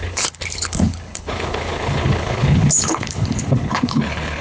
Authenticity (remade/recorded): remade